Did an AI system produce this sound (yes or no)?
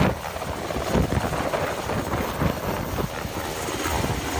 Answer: no